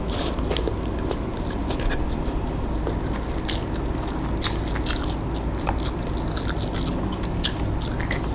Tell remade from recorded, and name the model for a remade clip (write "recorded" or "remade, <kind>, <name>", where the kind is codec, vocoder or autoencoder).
recorded